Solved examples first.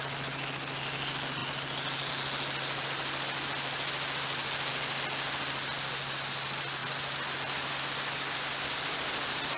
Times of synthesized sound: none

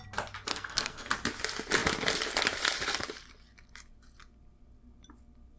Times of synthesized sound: 0.5-1.1 (codec, SNAC)

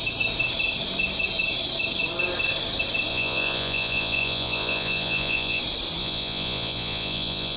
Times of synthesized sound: 3.1-5.6 (vocoder, Vocos); 6.0-7.6

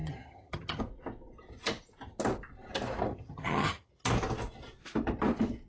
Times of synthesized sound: 0.0-0.8 (vocoder, HiFi-GAN); 3.1-3.9